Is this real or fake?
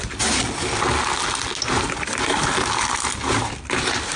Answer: real